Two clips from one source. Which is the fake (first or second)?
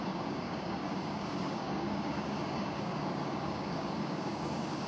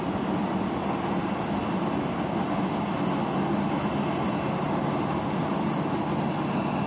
first